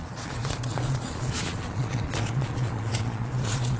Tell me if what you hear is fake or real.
fake